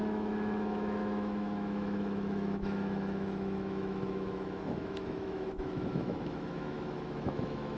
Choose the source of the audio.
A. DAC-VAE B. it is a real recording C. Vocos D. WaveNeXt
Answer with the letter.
A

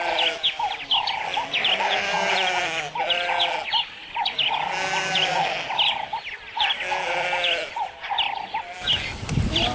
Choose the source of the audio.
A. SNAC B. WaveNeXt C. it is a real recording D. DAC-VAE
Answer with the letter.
C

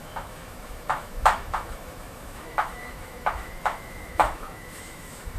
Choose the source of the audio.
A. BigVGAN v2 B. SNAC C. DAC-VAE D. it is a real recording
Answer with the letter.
C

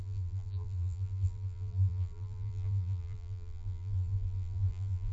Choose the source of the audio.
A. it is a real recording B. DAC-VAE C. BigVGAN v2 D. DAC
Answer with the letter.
C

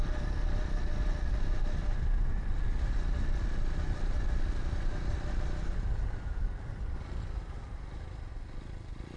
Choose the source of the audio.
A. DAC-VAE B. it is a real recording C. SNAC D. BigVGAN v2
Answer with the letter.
B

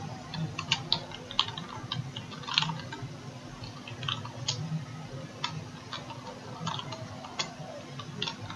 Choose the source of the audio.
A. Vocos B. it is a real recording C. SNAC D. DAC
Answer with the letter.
B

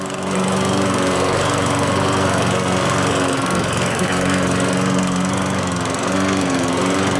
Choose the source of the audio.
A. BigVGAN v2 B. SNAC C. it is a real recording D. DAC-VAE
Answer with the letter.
B